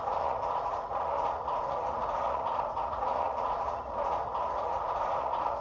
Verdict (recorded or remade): remade